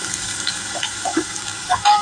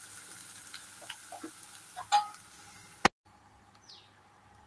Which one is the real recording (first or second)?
second